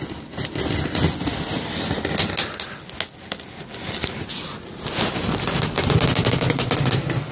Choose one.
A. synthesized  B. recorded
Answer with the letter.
B